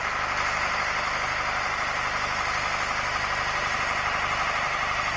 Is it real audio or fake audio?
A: real